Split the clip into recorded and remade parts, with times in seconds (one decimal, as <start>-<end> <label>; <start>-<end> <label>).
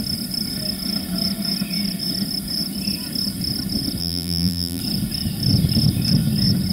0.0-4.0 recorded; 4.0-4.8 remade; 4.8-6.7 recorded